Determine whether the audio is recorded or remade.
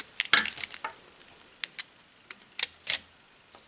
recorded